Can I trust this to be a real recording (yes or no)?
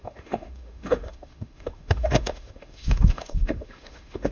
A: no